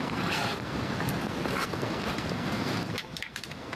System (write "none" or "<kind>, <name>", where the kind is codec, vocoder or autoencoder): codec, SNAC